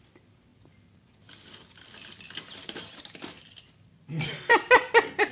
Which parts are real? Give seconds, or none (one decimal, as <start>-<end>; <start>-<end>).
0.0-5.3